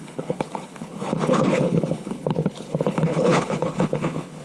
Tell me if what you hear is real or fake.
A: fake